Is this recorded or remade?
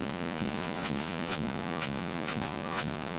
remade